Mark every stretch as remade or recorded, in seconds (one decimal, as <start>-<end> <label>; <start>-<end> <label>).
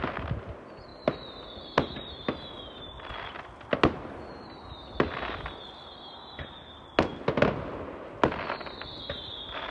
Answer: 0.0-9.7 recorded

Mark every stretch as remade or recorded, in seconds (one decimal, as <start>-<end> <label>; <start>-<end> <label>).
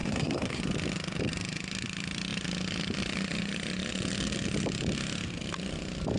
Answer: 0.0-0.6 remade; 0.6-6.2 recorded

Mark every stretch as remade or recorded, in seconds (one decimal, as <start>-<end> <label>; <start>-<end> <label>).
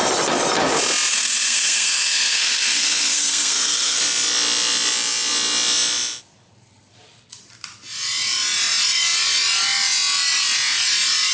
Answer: 0.0-1.1 recorded; 1.1-4.0 remade; 4.0-11.3 recorded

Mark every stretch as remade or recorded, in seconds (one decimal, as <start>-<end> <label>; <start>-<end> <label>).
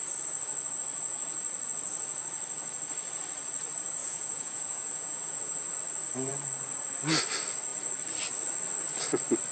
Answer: 0.0-4.0 recorded; 4.0-5.8 remade; 5.8-9.5 recorded